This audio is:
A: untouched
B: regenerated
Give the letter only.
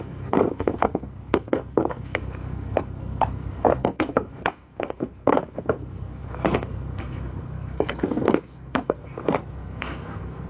B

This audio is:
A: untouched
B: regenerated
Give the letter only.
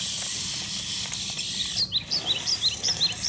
A